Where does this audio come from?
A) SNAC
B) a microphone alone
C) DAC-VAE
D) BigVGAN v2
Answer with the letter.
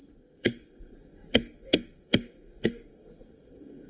A